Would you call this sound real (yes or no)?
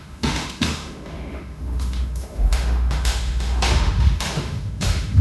no